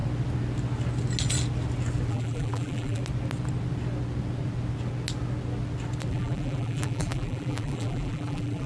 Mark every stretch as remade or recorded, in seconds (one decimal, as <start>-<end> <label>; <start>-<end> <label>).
0.0-2.1 recorded; 2.1-3.0 remade; 3.0-6.1 recorded; 6.1-8.7 remade